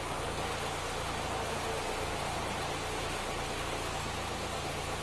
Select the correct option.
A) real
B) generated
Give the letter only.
A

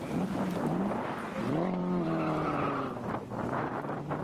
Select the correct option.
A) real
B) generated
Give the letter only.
B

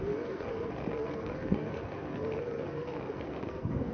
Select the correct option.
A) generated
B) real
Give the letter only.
A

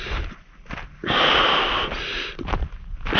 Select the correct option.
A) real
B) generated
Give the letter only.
A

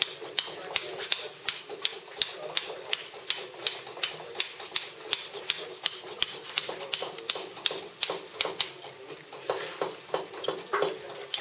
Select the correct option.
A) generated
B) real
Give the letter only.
B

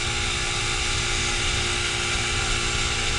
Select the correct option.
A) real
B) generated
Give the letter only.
A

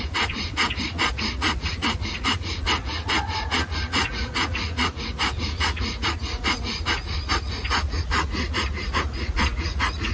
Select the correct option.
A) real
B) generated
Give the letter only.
B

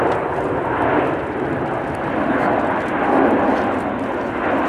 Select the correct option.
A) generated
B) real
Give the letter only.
B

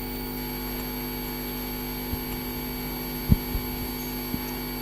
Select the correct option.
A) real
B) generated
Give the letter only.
A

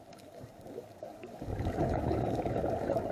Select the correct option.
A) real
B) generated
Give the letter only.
B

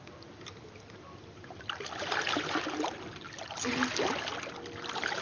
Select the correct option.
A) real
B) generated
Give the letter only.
A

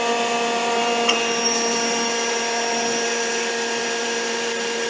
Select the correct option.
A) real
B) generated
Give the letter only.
B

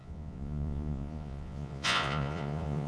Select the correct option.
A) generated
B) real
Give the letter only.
A